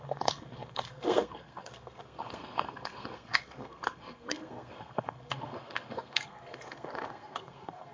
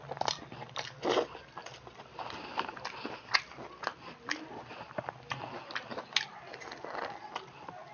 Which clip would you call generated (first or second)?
first